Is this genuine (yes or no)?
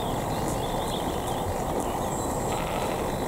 yes